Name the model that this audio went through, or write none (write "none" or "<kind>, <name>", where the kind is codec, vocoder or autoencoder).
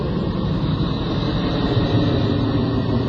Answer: none